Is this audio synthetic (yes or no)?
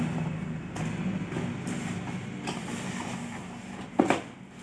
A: no